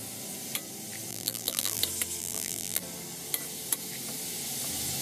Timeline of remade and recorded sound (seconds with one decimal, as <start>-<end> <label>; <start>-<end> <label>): 0.0-1.1 recorded; 1.1-1.8 remade; 1.8-2.2 recorded; 2.2-2.8 remade; 2.8-5.0 recorded